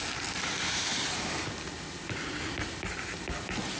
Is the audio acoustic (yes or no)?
yes